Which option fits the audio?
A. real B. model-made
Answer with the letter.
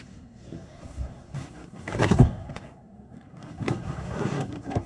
B